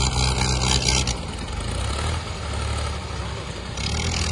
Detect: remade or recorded recorded